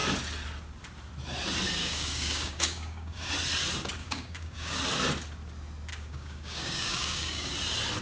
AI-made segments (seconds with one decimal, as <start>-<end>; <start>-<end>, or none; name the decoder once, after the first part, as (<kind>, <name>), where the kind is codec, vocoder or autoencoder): 1.8-3.3 (codec, DAC); 4.0-4.8; 5.9-7.5